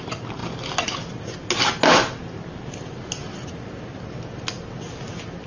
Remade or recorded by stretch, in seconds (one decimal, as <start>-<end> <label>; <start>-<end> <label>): 0.0-5.5 recorded